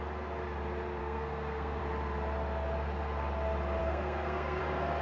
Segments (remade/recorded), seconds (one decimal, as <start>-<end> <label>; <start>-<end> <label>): 0.0-1.0 recorded; 1.0-1.8 remade; 1.8-3.8 recorded; 3.8-4.6 remade; 4.6-5.0 recorded